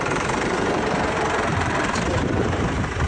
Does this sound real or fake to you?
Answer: fake